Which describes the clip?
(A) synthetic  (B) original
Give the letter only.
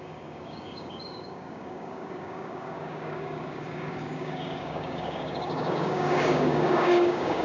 A